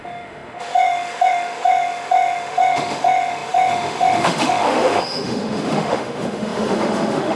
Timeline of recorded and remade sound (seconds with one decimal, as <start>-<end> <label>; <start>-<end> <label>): 0.0-7.4 remade